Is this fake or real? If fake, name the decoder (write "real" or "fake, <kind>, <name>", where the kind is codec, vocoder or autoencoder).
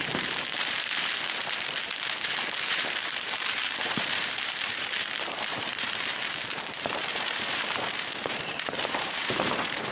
fake, vocoder, BigVGAN v2